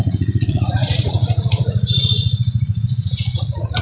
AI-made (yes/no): yes